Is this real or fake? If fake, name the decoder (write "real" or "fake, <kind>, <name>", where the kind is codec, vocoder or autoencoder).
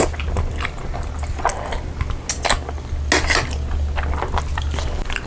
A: real